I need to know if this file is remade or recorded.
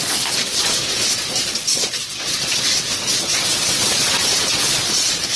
remade